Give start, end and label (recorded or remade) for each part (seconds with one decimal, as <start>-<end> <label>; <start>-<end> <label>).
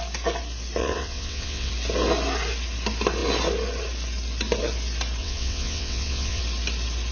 0.0-0.8 recorded; 0.8-1.7 remade; 1.7-5.2 recorded; 5.2-6.4 remade; 6.4-7.1 recorded